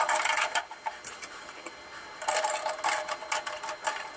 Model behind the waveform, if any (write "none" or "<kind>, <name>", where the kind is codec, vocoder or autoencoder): none